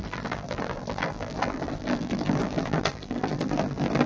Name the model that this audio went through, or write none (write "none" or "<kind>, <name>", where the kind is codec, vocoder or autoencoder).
vocoder, BigVGAN v2